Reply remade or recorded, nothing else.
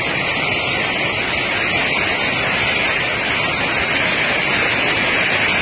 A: recorded